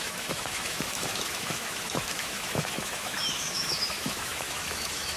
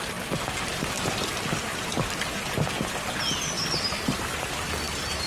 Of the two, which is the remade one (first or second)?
first